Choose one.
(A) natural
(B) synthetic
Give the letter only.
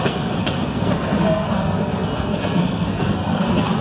B